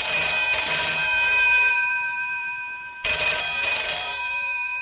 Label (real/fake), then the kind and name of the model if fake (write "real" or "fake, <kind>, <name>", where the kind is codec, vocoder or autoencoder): fake, vocoder, BigVGAN v2